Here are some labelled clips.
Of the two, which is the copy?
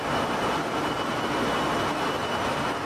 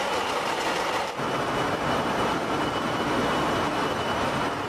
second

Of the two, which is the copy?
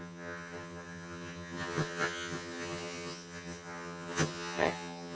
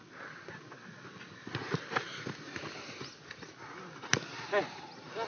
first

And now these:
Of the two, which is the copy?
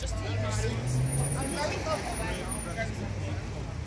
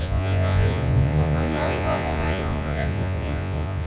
second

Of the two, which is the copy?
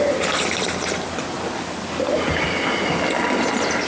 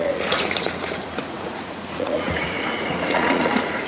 second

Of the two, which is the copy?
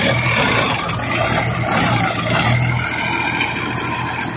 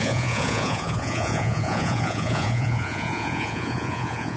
second